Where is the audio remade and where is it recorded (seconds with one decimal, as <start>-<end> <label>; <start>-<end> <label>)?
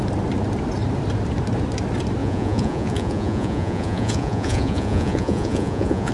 0.0-2.2 recorded; 2.2-6.1 remade